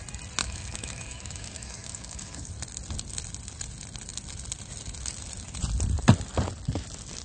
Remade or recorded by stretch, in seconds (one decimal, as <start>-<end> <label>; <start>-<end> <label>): 0.0-0.4 recorded; 0.4-2.5 remade; 2.5-7.2 recorded